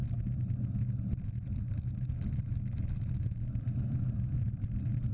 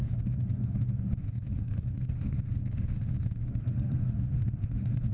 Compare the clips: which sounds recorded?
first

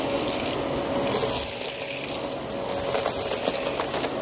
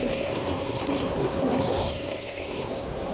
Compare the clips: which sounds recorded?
first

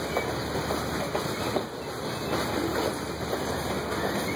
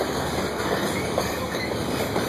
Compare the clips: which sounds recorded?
first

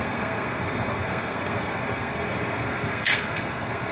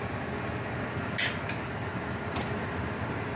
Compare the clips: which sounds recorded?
second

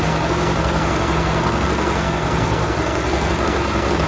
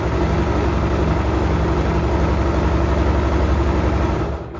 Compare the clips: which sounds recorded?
second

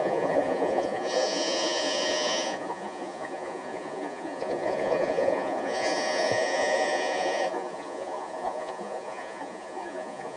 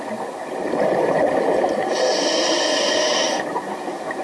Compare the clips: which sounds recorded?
second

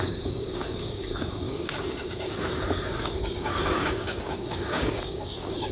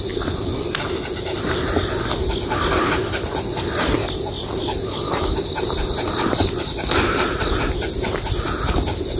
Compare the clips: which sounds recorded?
second